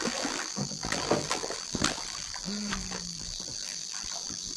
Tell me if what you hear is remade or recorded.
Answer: remade